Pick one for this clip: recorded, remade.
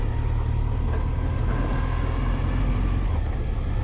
recorded